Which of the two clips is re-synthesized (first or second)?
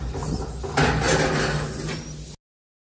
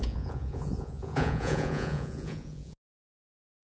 second